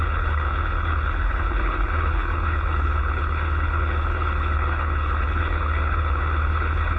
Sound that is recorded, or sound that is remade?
remade